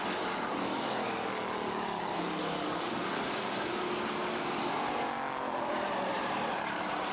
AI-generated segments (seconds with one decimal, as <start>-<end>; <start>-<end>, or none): 0.7-1.5; 2.4-3.7